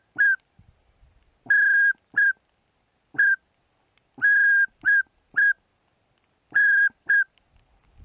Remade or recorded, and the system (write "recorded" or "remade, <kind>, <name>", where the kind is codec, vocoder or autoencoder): recorded